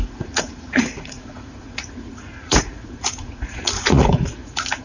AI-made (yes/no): yes